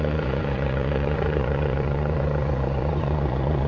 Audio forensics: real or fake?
fake